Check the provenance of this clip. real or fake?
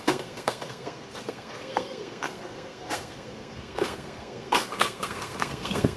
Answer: fake